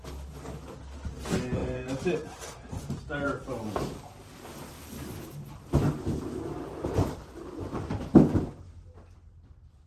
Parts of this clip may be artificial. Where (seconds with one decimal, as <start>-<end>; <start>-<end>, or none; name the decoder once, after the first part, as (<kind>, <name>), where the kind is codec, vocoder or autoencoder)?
1.6-3.7 (vocoder, BigVGAN v2)